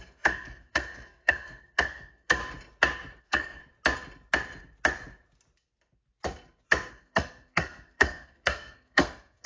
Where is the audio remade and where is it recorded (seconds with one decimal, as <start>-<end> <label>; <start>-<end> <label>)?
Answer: 0.0-2.4 remade; 2.4-3.2 recorded; 3.2-3.6 remade; 3.6-6.9 recorded; 6.9-9.5 remade